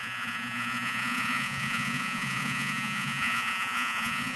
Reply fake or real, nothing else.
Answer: fake